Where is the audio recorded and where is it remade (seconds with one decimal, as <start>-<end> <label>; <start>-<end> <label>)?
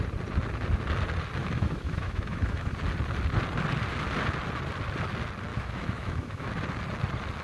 0.0-1.4 recorded; 1.4-2.7 remade; 2.7-5.5 recorded; 5.5-6.5 remade; 6.5-7.4 recorded